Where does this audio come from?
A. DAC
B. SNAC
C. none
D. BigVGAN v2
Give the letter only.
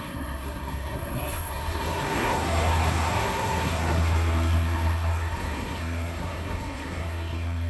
B